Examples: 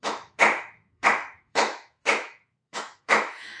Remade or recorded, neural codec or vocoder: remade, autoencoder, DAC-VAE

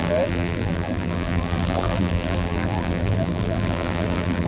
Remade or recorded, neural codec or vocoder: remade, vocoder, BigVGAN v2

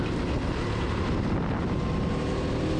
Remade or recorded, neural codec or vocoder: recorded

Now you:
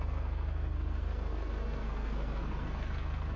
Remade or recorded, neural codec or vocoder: remade, codec, SNAC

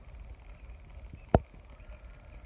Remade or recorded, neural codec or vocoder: recorded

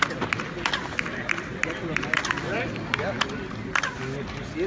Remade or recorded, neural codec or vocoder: recorded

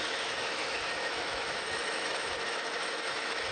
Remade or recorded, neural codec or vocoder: remade, autoencoder, DAC-VAE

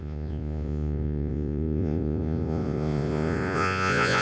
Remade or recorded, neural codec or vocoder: remade, vocoder, Vocos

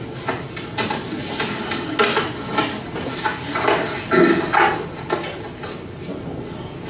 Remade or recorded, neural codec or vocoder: recorded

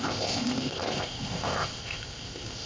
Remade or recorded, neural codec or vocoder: remade, codec, ZipCodec